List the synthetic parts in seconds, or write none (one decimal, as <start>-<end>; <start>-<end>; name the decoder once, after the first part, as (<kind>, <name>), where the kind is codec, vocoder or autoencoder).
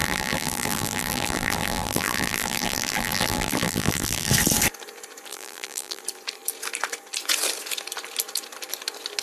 0.0-4.3 (vocoder, BigVGAN v2); 5.3-6.0